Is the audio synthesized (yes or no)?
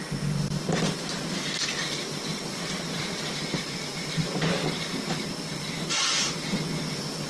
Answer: yes